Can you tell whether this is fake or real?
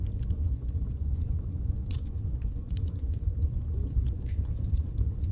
fake